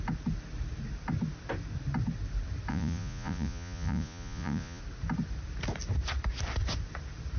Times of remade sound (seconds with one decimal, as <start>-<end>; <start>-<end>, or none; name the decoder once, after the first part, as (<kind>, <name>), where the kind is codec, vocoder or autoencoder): 2.7-4.8 (vocoder, Vocos)